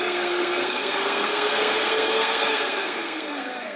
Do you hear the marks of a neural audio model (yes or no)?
yes